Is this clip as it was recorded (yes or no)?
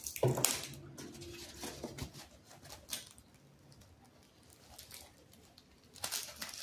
yes